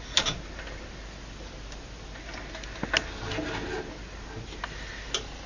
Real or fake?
real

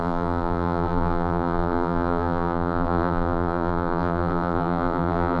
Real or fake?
fake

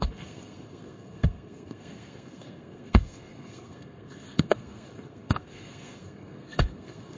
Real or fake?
fake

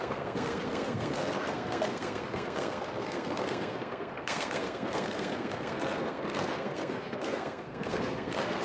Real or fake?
fake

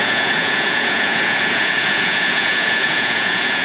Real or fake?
fake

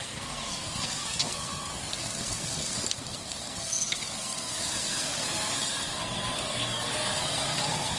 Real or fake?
fake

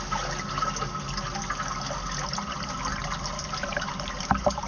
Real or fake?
real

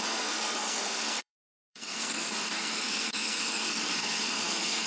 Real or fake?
fake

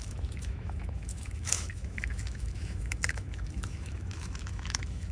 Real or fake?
fake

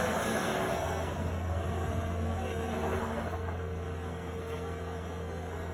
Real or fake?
fake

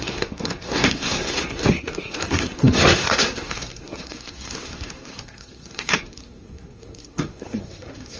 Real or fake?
fake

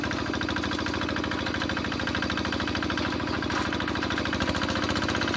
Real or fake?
real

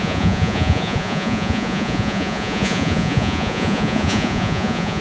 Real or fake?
fake